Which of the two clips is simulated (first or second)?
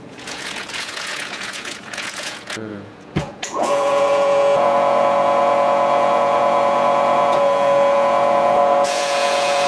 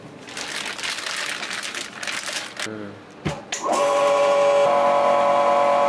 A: first